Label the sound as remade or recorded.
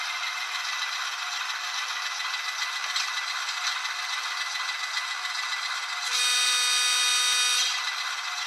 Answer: recorded